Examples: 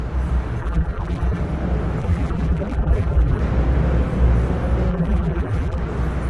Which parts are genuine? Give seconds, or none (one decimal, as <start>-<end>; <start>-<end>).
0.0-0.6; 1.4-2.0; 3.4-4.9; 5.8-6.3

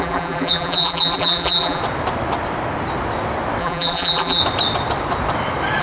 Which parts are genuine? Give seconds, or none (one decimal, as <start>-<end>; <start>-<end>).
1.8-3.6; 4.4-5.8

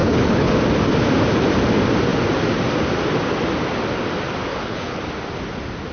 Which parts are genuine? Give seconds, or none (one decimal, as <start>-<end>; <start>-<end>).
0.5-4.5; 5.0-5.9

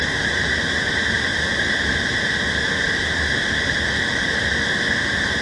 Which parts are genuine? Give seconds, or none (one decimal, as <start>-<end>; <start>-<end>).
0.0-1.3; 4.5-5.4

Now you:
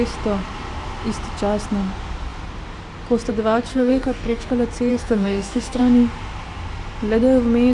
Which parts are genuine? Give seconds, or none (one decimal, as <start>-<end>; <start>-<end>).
0.0-3.7; 4.5-4.9; 5.8-7.7

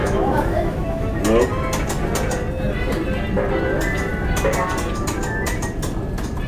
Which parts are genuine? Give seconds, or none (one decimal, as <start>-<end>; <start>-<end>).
1.2-6.5